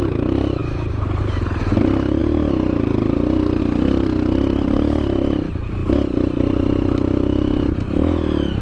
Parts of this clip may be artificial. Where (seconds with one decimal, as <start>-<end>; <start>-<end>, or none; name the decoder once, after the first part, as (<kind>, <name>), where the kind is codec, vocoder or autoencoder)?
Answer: none

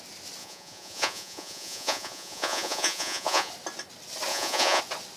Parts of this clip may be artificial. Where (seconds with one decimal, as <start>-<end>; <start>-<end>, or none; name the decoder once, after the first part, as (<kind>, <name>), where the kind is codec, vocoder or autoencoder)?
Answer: 0.4-3.5 (vocoder, Vocos); 4.3-4.8

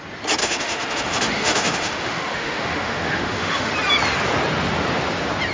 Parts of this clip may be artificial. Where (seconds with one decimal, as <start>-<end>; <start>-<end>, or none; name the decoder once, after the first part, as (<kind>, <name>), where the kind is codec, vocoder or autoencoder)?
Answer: 0.4-3.7 (autoencoder, DAC-VAE)

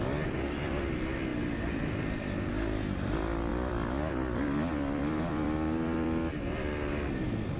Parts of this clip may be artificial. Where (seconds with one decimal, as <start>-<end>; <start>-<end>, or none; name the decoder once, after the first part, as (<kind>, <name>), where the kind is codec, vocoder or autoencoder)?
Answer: 3.5-6.4 (vocoder, BigVGAN v2)

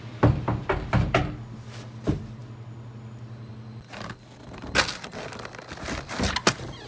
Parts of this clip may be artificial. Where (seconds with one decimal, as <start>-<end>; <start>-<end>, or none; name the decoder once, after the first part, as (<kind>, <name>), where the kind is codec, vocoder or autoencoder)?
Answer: none

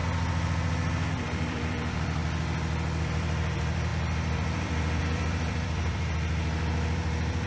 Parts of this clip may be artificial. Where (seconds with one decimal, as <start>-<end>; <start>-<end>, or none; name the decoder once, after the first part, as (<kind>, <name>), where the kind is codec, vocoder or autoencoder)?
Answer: 1.1-2.2 (vocoder, BigVGAN v2); 3.0-7.5